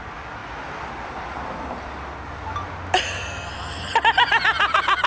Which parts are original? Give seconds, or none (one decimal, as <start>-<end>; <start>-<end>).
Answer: 0.0-5.1